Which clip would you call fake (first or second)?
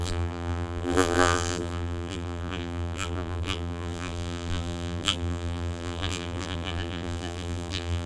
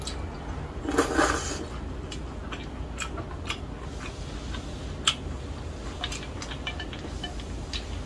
first